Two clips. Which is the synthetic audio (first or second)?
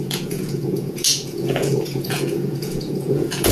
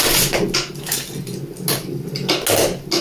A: first